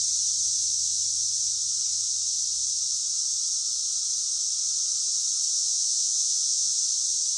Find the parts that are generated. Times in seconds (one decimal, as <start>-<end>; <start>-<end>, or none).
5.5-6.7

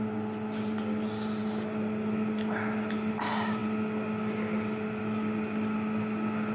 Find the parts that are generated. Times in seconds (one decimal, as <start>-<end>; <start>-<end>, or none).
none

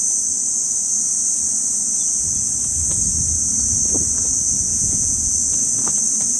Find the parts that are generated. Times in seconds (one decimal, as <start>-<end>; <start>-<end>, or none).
4.7-5.3

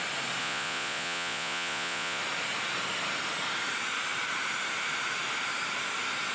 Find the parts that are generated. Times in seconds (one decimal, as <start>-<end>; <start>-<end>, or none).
0.4-2.2

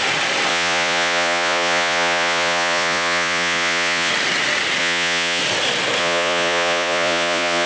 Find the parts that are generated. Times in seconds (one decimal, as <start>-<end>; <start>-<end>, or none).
0.5-4.1; 4.8-5.4; 6.0-7.7

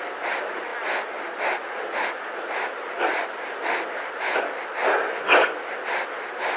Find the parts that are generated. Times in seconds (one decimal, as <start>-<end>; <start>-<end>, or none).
none

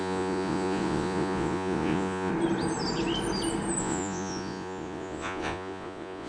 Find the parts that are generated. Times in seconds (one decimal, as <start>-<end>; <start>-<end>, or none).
0.0-2.3; 3.8-6.3